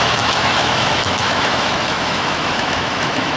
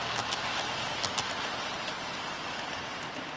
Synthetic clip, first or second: first